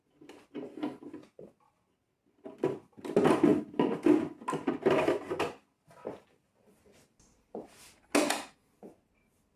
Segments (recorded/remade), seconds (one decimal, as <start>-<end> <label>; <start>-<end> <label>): 0.0-9.6 recorded